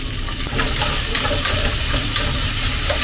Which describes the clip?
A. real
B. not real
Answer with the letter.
A